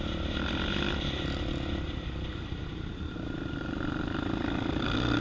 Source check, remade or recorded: remade